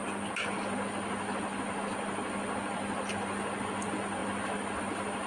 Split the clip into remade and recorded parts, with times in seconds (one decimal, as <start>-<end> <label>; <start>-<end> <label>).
0.0-5.3 recorded